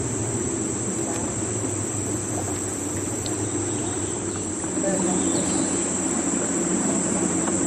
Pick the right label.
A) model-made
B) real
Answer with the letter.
A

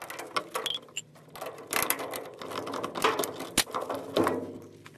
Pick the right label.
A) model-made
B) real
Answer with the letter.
B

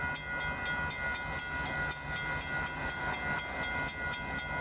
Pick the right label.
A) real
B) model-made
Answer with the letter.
A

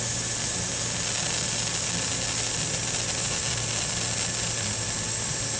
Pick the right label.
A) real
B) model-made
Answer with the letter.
A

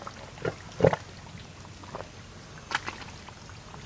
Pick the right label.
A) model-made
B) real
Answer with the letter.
B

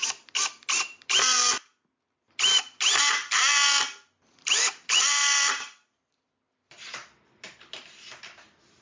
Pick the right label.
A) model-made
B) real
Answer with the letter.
B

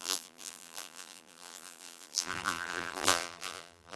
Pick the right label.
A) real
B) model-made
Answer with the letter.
B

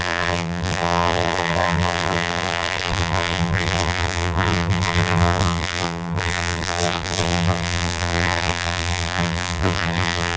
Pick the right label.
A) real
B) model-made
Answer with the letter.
B